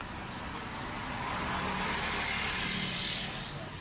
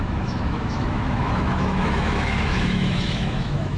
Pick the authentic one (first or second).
first